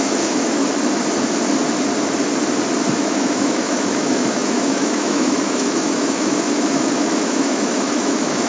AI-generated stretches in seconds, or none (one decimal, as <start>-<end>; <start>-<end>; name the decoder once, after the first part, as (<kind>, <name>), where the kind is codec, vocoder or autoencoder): 0.0-0.6 (autoencoder, DAC-VAE); 3.0-8.5